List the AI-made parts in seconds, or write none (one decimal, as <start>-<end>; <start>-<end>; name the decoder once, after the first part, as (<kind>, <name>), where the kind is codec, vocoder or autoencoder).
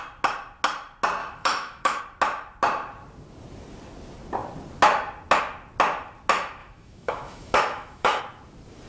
1.2-2.0 (autoencoder, DAC-VAE); 6.6-8.2